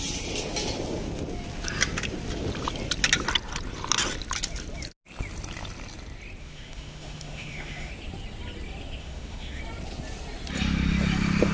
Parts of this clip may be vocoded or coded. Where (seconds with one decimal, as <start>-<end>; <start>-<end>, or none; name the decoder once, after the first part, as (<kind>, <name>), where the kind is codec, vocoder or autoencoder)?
6.4-7.9 (autoencoder, DAC-VAE); 9.0-9.6

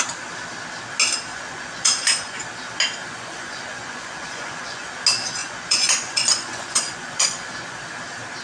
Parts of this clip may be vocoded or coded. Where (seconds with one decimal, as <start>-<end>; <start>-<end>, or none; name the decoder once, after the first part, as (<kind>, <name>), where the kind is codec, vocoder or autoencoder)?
1.3-2.4 (vocoder, Vocos); 3.0-4.9; 5.4-7.8